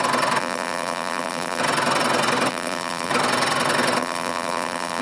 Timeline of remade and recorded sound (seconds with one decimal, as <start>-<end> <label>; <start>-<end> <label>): 0.0-0.4 recorded; 0.4-1.6 remade; 1.6-2.5 recorded; 2.5-3.1 remade; 3.1-4.0 recorded; 4.0-5.0 remade